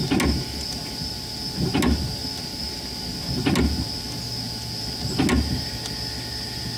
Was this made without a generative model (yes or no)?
yes